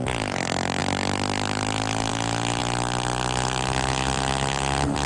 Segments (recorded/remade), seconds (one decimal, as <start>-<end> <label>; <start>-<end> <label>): 0.0-5.1 recorded